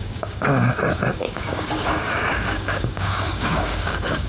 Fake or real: fake